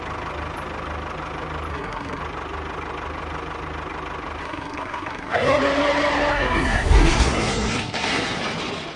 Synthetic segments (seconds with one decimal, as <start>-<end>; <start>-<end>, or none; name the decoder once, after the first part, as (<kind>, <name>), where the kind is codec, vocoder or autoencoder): 1.7-2.2 (codec, SNAC); 4.4-5.6; 6.3-8.4